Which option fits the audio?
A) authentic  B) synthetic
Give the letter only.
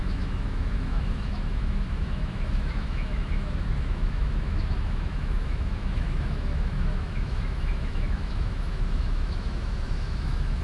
B